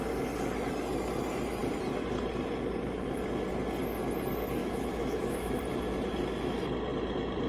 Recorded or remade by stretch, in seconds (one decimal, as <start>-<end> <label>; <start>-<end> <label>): 0.0-4.6 recorded; 4.6-5.6 remade; 5.6-7.5 recorded